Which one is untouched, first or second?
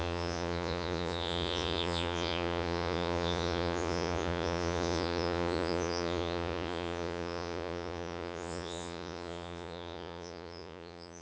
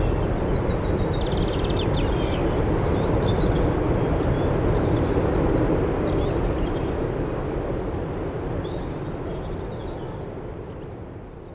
second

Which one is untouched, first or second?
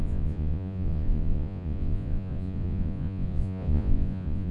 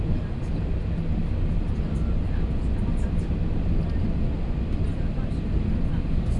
second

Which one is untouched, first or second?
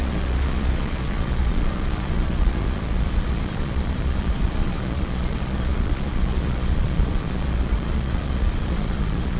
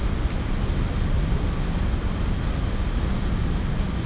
second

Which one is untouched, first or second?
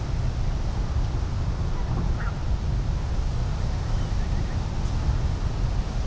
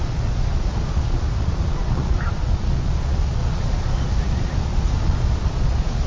first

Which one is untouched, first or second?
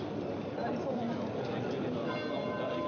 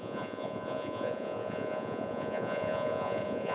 first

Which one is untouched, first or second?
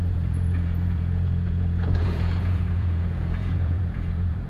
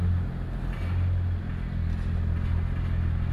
second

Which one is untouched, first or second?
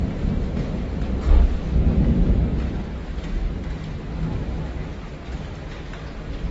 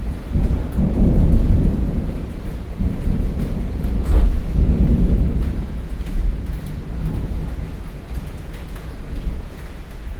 first